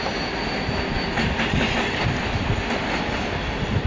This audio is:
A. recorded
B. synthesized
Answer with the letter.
A